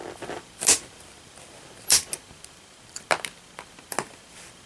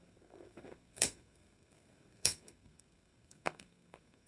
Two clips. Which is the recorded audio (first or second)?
first